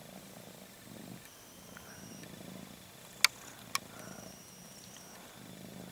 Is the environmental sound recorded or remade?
recorded